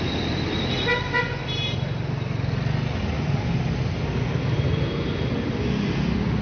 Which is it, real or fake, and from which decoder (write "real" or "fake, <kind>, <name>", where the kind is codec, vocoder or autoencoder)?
real